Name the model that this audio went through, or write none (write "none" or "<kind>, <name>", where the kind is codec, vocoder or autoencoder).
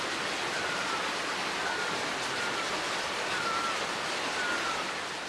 none